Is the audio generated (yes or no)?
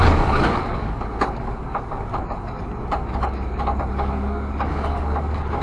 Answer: yes